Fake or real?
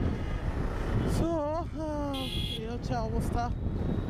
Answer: real